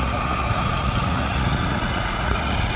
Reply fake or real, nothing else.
fake